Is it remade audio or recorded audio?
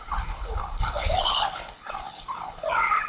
remade